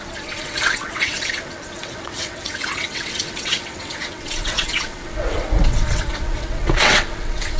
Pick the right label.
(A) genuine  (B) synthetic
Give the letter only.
B